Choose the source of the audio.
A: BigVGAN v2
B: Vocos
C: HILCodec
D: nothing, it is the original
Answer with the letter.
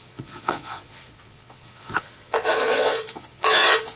B